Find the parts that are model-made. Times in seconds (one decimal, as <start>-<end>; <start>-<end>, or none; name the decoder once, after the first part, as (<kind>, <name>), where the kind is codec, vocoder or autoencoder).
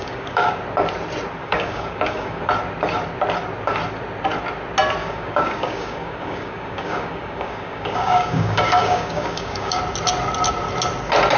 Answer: 0.0-0.6 (codec, DAC); 1.4-2.4; 5.0-9.8